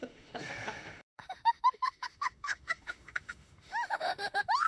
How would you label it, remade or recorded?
remade